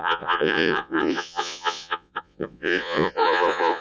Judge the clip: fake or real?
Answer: fake